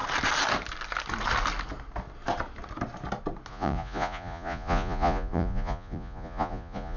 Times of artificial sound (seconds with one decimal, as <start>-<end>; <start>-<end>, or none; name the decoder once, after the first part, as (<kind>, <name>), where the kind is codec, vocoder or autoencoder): 3.5-7.0 (vocoder, Vocos)